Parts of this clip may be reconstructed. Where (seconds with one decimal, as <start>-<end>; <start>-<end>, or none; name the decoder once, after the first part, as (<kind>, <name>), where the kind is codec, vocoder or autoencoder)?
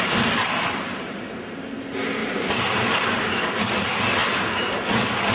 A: 2.2-3.4 (vocoder, BigVGAN v2)